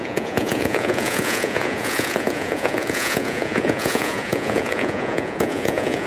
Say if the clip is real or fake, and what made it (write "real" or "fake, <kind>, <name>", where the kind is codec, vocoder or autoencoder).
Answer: fake, vocoder, Vocos